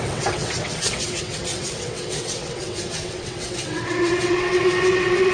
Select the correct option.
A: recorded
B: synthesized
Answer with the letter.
B